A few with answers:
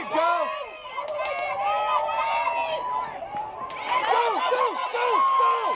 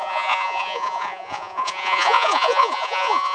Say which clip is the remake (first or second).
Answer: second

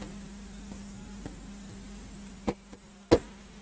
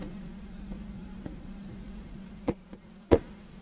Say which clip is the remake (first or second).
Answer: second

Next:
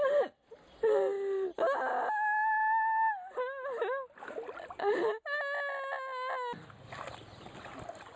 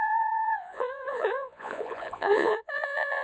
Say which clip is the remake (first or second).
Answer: second